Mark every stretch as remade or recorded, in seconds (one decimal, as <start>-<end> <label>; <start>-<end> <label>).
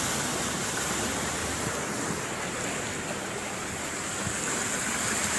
0.0-5.4 recorded